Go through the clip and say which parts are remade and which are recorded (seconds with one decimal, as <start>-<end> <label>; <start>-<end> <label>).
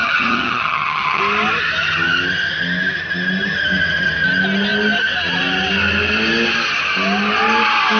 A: 0.0-1.2 remade; 1.2-8.0 recorded